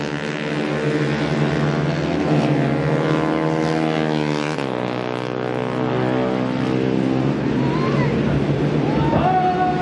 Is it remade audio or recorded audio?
recorded